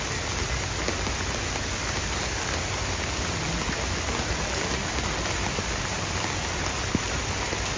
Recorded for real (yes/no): yes